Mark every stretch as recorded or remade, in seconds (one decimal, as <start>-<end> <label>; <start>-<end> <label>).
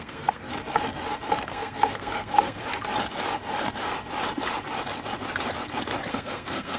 0.0-0.5 remade; 0.5-1.5 recorded; 1.5-2.6 remade; 2.6-6.1 recorded; 6.1-6.8 remade